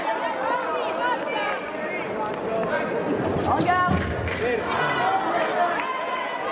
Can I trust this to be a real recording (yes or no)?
yes